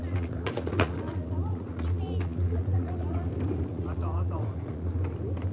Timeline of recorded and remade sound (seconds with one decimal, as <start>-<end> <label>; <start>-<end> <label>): 0.0-3.3 remade; 3.3-3.7 recorded; 3.7-4.9 remade; 4.9-5.5 recorded